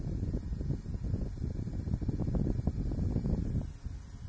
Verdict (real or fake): real